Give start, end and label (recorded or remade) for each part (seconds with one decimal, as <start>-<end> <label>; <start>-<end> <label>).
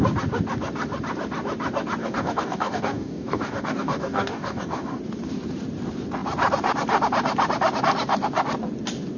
0.0-2.0 recorded; 2.0-5.0 remade; 5.0-9.2 recorded